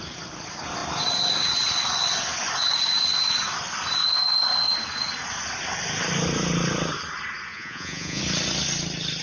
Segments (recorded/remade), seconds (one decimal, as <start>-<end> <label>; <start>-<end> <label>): 0.0-7.5 recorded; 7.5-8.2 remade; 8.2-9.2 recorded